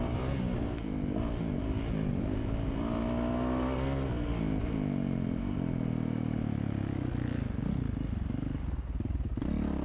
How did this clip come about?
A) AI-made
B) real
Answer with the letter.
B